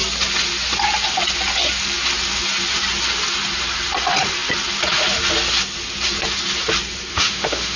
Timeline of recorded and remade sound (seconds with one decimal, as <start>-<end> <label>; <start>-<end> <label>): 0.0-7.1 recorded; 7.1-7.8 remade